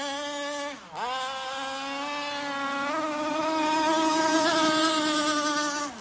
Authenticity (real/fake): real